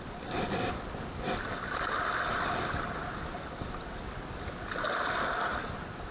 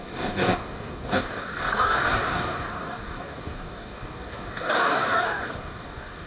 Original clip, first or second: first